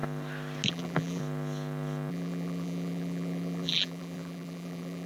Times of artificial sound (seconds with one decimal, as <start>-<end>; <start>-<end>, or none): 0.7-1.2; 2.1-5.1